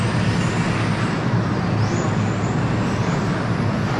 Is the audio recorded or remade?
recorded